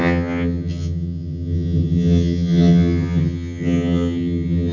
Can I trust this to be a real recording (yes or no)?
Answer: no